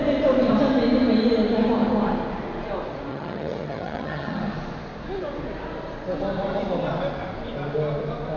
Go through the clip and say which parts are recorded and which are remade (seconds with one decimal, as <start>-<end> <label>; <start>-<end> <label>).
0.0-3.1 recorded; 3.1-4.4 remade; 4.4-8.4 recorded

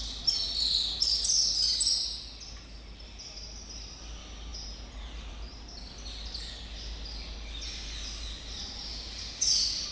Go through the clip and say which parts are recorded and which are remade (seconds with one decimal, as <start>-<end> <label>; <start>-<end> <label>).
0.0-9.9 recorded